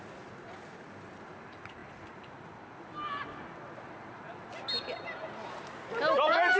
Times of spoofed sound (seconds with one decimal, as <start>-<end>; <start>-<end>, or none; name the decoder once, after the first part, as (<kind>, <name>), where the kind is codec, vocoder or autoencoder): none